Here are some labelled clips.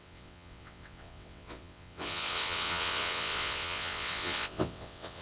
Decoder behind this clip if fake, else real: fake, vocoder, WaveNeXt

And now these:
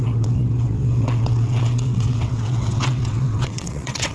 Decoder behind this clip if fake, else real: fake, vocoder, WaveNeXt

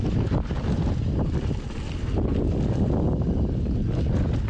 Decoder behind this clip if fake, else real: real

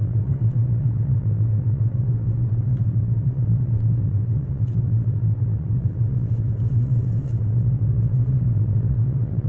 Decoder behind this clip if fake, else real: fake, vocoder, WaveNeXt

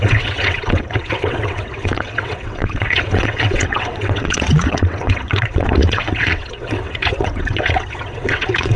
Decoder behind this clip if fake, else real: fake, vocoder, WaveNeXt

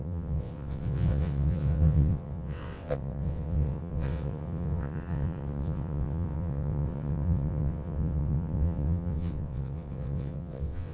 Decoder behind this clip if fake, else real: fake, vocoder, WaveNeXt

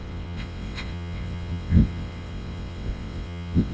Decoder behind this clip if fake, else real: fake, vocoder, WaveNeXt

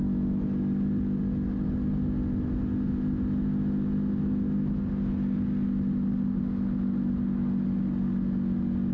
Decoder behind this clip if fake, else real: real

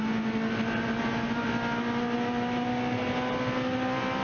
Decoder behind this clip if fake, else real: real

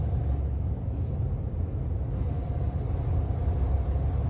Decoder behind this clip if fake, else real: real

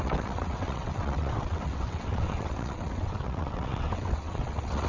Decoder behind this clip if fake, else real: fake, vocoder, WaveNeXt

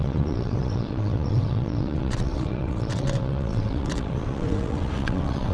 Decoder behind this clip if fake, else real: fake, vocoder, WaveNeXt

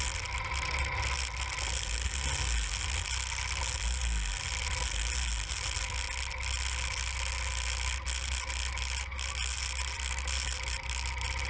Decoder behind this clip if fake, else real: real